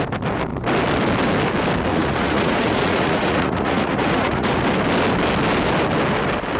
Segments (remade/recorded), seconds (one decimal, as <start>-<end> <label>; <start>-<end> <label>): 0.0-1.9 recorded; 1.9-4.6 remade; 4.6-6.6 recorded